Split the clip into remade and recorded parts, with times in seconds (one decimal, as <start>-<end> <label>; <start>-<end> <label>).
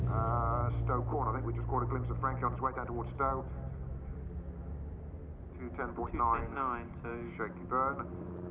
0.0-8.5 recorded